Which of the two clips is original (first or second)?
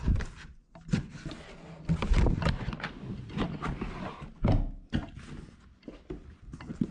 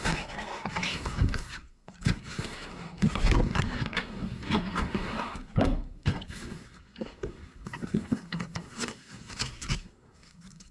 first